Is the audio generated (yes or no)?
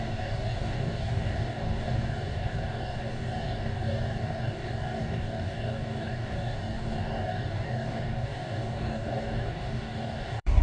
yes